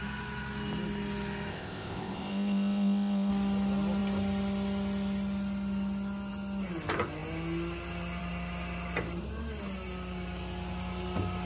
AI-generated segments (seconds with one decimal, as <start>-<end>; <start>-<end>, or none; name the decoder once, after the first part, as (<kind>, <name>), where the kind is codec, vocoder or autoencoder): 1.5-3.3 (codec, ZipCodec)